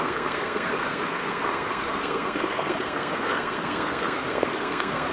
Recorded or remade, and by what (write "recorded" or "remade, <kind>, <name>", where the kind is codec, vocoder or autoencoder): remade, codec, SNAC